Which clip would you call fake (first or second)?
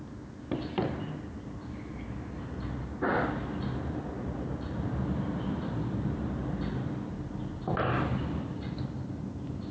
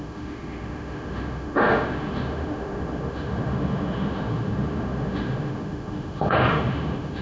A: second